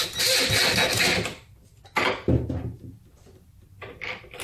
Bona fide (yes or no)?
yes